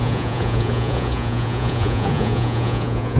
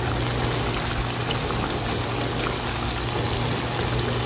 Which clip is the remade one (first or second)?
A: first